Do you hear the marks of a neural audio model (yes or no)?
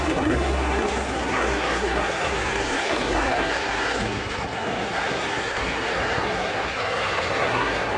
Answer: yes